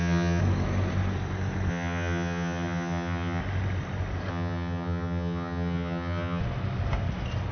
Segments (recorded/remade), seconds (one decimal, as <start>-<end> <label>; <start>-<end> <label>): 0.0-0.4 remade; 0.4-1.7 recorded; 1.7-3.4 remade; 3.4-4.3 recorded; 4.3-6.4 remade; 6.4-7.5 recorded